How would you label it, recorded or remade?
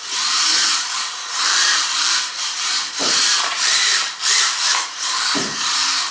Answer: remade